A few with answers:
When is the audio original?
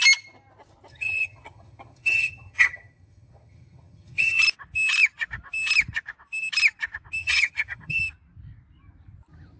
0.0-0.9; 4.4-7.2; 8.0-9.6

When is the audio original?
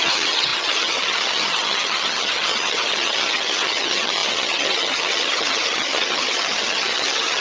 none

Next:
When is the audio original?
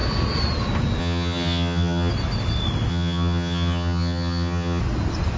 0.0-1.0; 2.1-2.9; 4.8-5.4